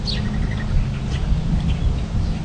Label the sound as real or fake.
real